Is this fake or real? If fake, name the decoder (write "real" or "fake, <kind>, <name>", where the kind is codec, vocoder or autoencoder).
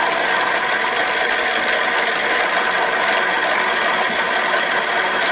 real